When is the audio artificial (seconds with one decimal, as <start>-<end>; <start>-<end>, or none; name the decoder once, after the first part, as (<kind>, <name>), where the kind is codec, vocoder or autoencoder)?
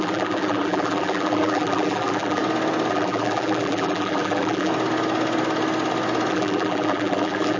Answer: 0.0-2.4 (vocoder, BigVGAN v2); 2.9-4.7; 6.3-7.6